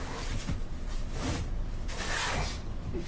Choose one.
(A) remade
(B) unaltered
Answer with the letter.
B